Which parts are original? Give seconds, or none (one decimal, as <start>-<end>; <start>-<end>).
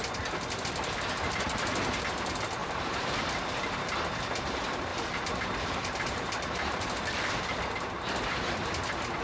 0.0-2.6; 3.1-4.9; 7.4-9.2